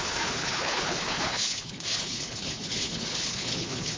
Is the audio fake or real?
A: fake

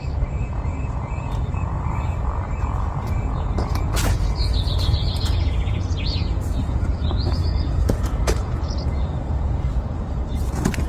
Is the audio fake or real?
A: fake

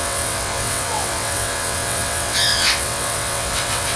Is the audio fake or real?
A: fake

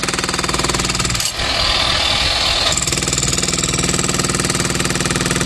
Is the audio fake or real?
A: real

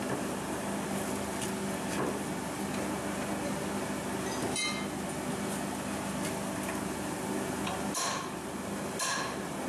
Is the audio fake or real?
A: real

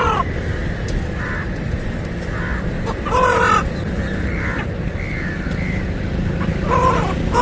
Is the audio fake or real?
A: real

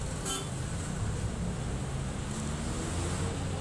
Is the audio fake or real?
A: real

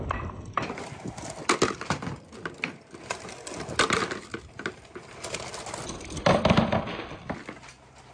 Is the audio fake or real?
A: real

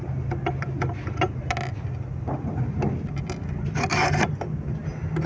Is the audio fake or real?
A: real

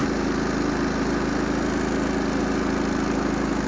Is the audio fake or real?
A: real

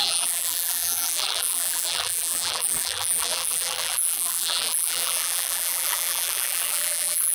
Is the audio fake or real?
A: fake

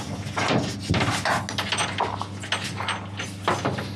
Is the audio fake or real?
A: real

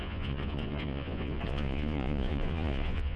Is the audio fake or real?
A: fake